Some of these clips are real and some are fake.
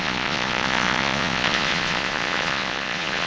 fake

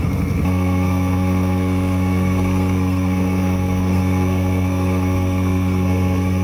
fake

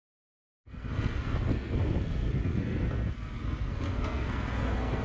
fake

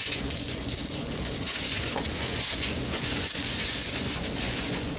fake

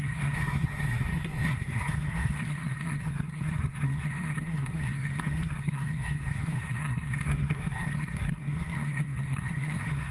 fake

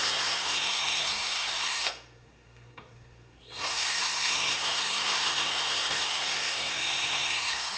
fake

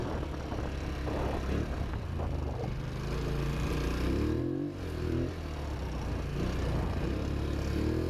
real